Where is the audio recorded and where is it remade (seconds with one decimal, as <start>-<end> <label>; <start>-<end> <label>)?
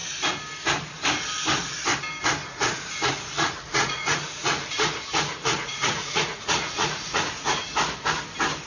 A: 0.0-2.4 recorded; 2.4-7.6 remade; 7.6-8.7 recorded